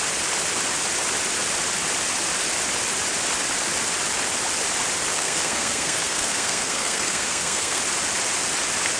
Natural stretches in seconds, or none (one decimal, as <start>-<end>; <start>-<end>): 0.0-5.1; 7.8-9.0